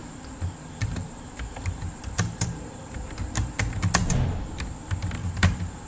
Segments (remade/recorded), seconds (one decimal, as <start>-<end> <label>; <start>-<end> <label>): 0.0-3.5 remade; 3.5-5.2 recorded; 5.2-5.9 remade